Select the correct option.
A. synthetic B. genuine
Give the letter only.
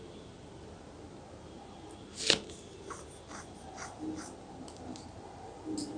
B